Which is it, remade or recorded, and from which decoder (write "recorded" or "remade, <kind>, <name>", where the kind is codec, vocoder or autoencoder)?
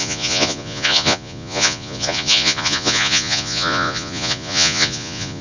remade, vocoder, Vocos